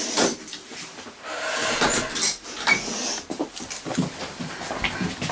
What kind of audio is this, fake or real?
real